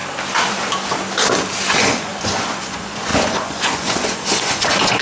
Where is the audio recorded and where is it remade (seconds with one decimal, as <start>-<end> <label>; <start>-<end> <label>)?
0.0-1.7 recorded; 1.7-5.0 remade